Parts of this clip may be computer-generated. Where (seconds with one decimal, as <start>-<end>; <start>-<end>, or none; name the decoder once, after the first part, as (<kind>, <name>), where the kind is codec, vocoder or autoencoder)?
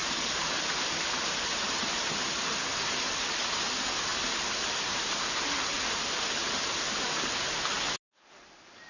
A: 0.0-1.7 (vocoder, BigVGAN v2); 4.1-6.7